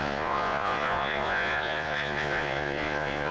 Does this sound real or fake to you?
fake